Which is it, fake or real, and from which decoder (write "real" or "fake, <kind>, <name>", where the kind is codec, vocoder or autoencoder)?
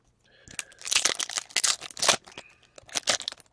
real